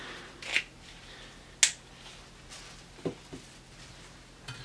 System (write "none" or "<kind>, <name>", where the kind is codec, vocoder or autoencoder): none